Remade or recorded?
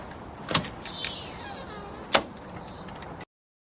recorded